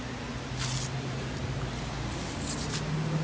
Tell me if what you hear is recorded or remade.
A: recorded